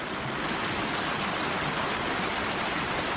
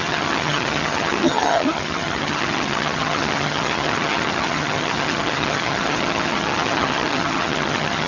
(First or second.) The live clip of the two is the first